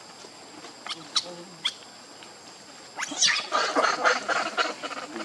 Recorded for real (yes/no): yes